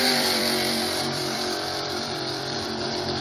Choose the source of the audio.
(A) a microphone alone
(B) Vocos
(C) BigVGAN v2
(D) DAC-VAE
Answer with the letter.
C